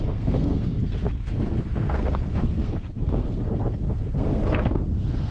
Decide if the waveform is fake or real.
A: fake